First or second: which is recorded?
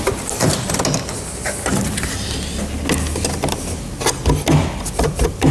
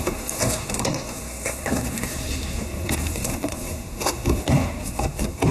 first